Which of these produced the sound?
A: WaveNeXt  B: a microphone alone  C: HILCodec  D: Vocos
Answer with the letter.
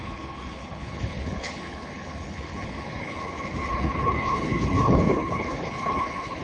C